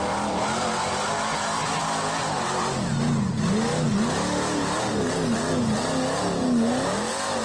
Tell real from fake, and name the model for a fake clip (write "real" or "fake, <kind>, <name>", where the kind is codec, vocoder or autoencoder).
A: real